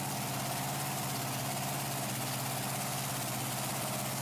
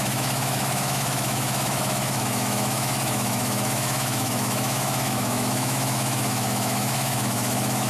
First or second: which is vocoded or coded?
second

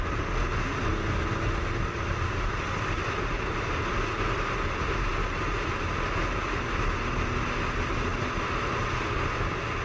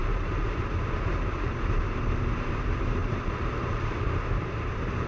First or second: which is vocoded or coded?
second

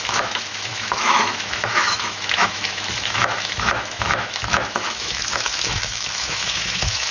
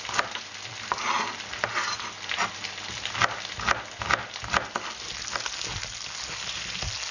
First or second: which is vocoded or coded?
first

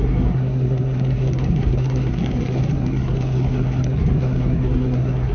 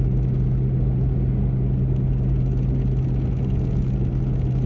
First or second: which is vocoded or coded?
first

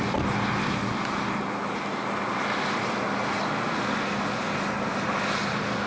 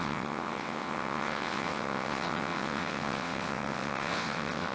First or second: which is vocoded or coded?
second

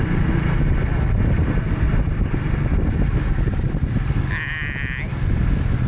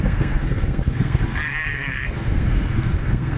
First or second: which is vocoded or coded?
second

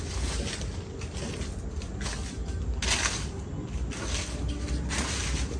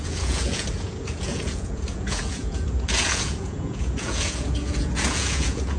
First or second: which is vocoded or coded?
second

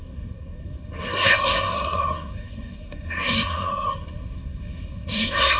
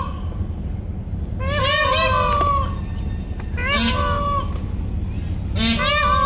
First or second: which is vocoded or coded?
first